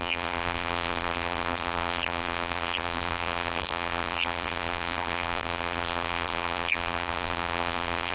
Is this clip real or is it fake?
fake